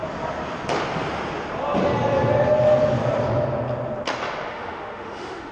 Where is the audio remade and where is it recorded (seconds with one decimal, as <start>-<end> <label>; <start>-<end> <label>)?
0.0-4.5 recorded; 4.5-5.5 remade